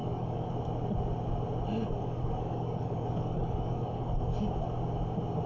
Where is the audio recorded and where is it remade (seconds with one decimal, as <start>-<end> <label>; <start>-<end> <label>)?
0.0-0.5 remade; 0.5-1.8 recorded; 1.8-4.4 remade; 4.4-5.5 recorded